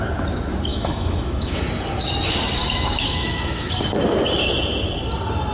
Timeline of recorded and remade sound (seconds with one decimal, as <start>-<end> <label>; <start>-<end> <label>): 0.0-0.7 recorded; 0.7-1.6 remade; 1.6-2.6 recorded; 2.6-3.7 remade; 3.7-5.5 recorded